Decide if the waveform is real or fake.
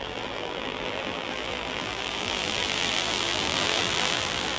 fake